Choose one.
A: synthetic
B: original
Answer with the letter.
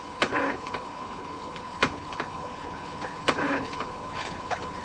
A